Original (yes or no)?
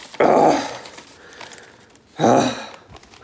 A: yes